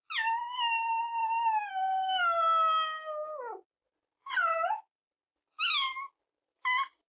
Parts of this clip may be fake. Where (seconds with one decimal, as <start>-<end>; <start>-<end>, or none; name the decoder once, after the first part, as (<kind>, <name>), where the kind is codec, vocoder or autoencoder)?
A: none